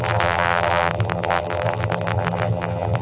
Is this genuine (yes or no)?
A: no